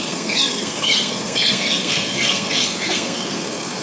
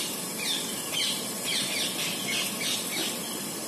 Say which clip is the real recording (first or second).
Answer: second